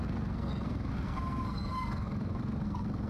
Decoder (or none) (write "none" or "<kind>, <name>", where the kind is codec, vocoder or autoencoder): codec, SNAC